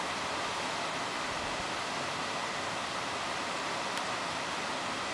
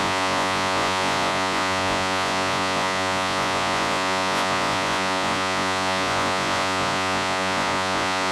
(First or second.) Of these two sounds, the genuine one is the first